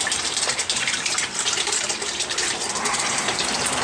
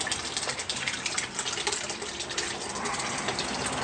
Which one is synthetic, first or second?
first